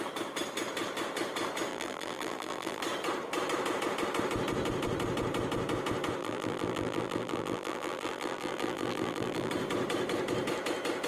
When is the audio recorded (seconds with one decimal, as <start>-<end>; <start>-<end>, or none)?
0.0-1.7; 2.8-6.2; 9.5-11.1